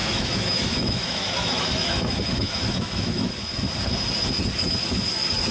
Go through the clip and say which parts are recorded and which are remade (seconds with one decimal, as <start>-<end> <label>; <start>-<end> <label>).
0.0-3.3 remade; 3.3-5.5 recorded